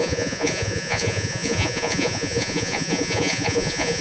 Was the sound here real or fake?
fake